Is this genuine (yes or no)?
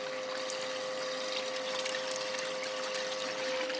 yes